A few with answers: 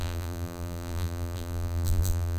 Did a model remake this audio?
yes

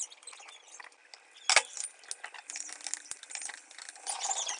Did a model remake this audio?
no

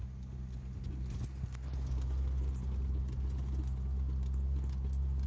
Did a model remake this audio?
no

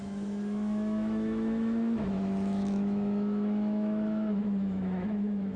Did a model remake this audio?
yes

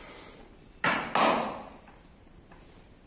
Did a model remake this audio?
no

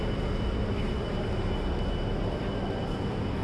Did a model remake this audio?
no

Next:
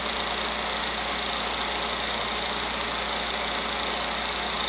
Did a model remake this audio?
no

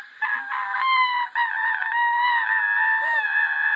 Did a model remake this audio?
no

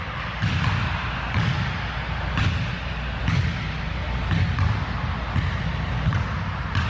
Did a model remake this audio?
no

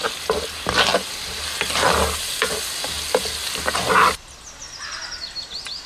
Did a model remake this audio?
no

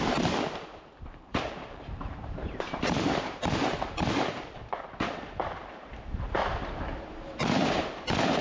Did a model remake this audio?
yes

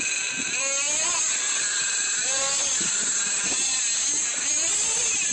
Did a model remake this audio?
no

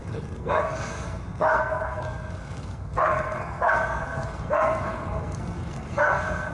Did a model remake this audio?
yes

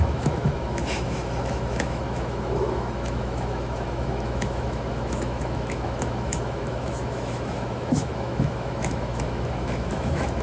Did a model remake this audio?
yes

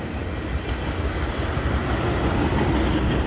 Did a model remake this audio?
no